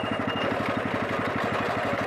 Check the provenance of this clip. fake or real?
real